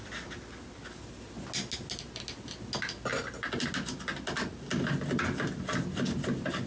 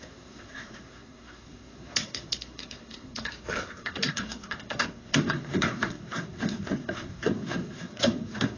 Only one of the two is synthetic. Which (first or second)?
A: second